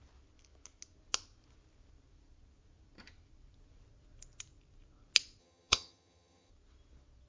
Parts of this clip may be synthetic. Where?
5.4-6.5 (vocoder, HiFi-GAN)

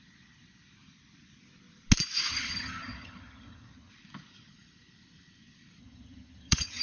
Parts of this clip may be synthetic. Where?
2.3-3.9 (vocoder, HiFi-GAN); 5.8-6.8